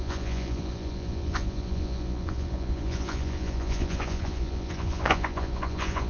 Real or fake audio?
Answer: fake